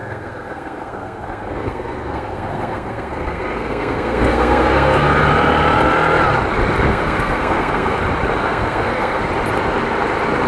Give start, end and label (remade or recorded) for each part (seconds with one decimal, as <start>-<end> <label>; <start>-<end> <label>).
0.0-5.2 remade; 5.2-6.9 recorded; 6.9-8.0 remade; 8.0-8.4 recorded; 8.4-9.2 remade; 9.2-10.5 recorded